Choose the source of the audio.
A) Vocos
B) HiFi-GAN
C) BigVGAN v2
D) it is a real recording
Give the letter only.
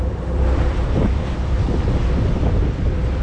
C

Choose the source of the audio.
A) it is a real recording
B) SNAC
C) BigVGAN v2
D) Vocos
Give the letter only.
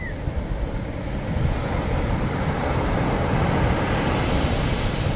A